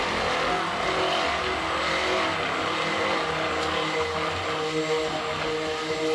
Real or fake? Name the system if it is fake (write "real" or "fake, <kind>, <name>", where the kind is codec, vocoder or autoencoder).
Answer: real